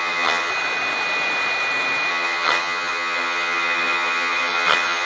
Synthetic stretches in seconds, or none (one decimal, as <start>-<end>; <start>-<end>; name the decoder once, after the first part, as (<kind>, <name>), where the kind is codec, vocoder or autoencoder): 0.0-0.5 (vocoder, HiFi-GAN); 2.1-5.1